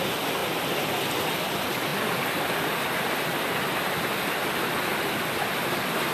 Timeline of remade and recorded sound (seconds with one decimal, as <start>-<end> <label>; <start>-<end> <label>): 0.0-6.1 recorded